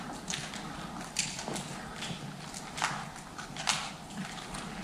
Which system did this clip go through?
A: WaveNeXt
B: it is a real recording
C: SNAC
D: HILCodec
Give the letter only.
B